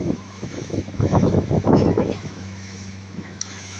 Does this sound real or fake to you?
fake